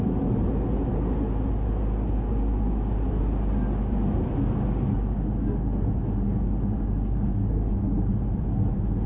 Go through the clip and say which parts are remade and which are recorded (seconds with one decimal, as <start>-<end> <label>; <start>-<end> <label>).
0.0-7.3 recorded; 7.3-8.1 remade; 8.1-9.1 recorded